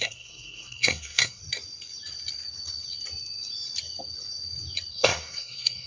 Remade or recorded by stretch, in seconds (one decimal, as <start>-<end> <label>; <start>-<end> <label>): 0.0-1.4 remade; 1.4-4.9 recorded; 4.9-5.9 remade